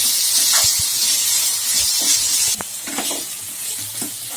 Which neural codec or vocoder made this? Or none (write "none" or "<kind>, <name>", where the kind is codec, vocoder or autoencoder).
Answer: vocoder, Vocos